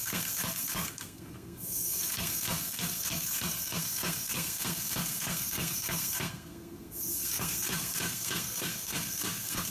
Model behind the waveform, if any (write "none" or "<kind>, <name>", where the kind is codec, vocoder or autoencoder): codec, SNAC